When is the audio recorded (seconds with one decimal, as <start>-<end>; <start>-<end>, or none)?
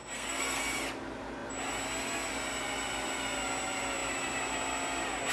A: 0.6-5.3